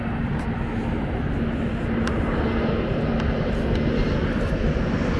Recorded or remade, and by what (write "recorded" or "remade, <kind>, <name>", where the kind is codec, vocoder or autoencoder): recorded